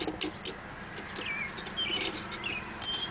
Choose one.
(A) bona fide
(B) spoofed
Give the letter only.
A